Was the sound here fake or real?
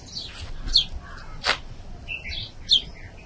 real